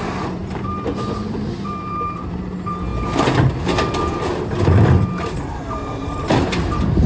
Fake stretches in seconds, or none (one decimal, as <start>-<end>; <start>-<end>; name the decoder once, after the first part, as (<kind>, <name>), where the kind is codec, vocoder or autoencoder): 0.0-2.9 (vocoder, BigVGAN v2); 5.7-7.1